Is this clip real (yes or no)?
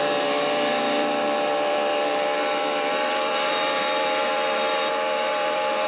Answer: no